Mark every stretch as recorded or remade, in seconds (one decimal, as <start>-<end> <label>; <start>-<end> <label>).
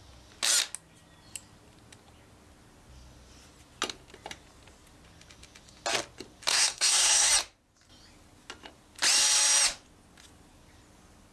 0.0-6.5 recorded; 6.5-7.3 remade; 7.3-11.3 recorded